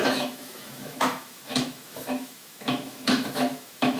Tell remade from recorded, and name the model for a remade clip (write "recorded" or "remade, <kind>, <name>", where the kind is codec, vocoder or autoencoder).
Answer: remade, autoencoder, DAC-VAE